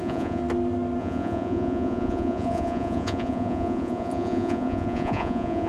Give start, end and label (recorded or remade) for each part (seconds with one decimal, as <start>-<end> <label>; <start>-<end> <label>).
0.0-0.4 remade; 0.4-1.0 recorded; 1.0-5.7 remade